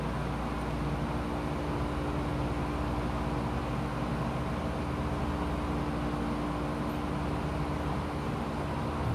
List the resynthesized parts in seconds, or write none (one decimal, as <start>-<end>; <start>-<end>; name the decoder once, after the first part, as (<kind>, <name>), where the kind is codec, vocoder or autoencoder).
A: none